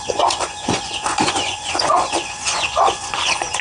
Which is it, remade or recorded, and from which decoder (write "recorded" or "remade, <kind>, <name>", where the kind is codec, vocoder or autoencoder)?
remade, vocoder, Vocos